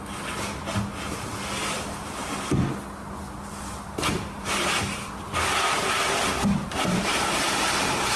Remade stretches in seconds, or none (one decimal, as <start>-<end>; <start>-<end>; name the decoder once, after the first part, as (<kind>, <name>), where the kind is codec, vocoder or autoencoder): none